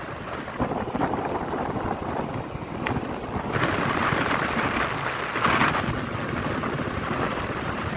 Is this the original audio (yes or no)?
yes